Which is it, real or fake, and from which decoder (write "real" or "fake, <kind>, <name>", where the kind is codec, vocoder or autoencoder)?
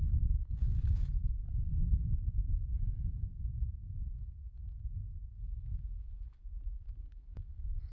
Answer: fake, codec, DAC